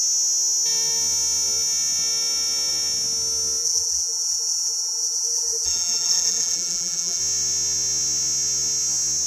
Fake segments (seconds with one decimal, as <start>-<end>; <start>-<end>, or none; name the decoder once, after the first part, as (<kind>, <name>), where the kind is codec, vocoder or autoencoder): 3.6-7.2 (vocoder, BigVGAN v2)

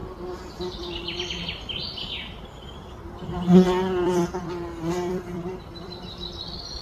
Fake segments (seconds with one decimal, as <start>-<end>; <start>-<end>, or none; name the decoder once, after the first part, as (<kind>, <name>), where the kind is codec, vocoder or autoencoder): 0.0-1.4 (vocoder, BigVGAN v2); 3.5-6.8

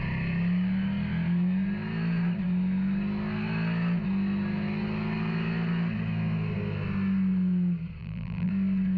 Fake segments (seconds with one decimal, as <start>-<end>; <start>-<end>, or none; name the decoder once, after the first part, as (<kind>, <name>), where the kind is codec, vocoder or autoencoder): 8.0-8.5 (vocoder, BigVGAN v2)

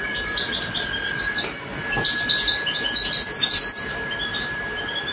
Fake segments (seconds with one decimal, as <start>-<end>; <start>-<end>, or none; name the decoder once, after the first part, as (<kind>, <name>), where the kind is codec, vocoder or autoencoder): 4.3-5.1 (vocoder, BigVGAN v2)

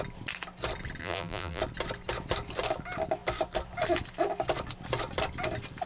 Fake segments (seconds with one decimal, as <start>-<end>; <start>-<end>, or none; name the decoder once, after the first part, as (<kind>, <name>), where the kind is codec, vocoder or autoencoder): 1.0-1.6 (vocoder, BigVGAN v2)

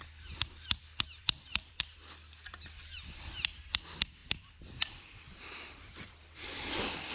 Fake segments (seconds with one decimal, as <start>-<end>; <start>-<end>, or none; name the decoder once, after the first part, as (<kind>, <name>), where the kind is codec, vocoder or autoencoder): 1.2-1.8 (vocoder, BigVGAN v2); 4.2-7.1

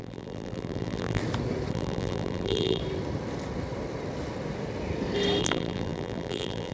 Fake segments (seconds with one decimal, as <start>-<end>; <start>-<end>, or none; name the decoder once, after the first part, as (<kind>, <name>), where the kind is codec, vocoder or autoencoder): 0.0-1.2 (vocoder, BigVGAN v2); 1.7-2.8; 5.4-6.7

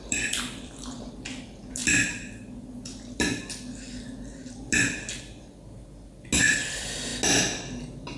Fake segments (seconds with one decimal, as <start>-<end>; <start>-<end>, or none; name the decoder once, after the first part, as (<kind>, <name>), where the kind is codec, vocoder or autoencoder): 0.0-1.8 (vocoder, BigVGAN v2); 6.4-7.1